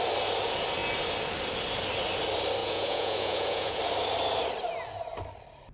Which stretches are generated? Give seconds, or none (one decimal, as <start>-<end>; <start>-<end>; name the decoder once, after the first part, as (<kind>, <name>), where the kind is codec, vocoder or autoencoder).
2.6-3.8 (vocoder, Vocos)